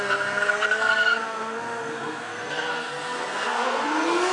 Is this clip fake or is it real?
fake